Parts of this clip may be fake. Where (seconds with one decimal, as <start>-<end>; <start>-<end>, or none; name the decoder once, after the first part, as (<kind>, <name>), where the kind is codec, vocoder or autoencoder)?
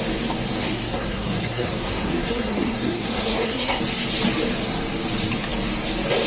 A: 0.6-3.8 (codec, SNAC)